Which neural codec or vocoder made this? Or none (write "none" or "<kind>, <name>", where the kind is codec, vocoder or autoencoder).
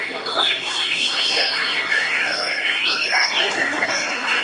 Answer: codec, SNAC